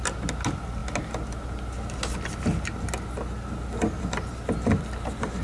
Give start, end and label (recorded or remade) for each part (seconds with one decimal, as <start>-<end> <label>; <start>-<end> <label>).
0.0-5.4 recorded